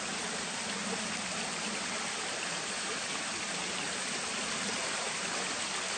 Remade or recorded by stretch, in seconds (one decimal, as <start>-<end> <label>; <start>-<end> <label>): 0.0-6.0 recorded